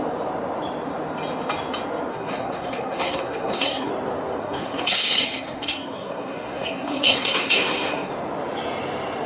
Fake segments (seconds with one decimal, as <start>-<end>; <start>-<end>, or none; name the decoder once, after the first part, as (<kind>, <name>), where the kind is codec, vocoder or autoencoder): 2.1-3.9 (codec, SNAC); 4.4-8.1